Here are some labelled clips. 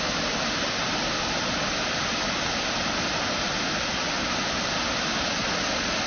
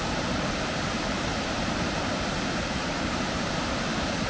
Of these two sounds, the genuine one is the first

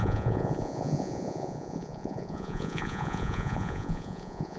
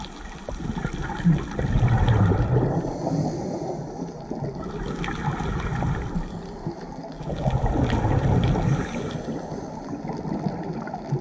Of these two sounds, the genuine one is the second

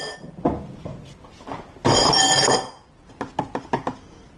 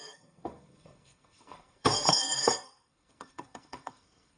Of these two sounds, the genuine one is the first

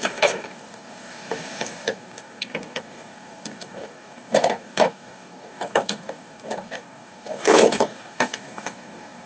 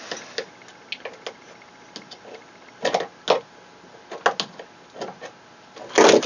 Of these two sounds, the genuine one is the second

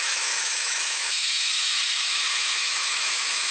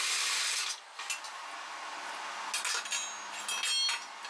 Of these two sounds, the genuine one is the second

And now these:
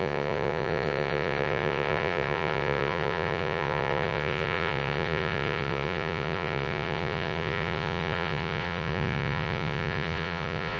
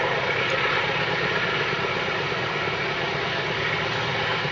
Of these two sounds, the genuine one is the second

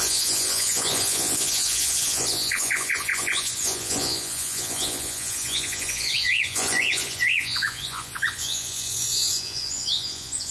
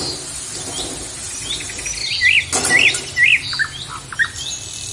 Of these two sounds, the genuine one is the second